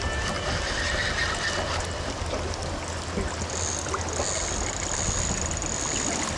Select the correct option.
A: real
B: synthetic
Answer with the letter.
A